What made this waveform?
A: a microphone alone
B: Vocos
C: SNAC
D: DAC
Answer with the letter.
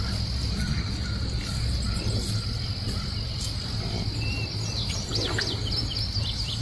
A